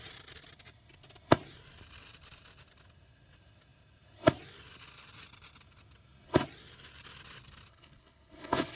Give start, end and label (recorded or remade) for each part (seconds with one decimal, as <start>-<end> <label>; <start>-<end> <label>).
0.0-7.7 recorded; 7.7-8.8 remade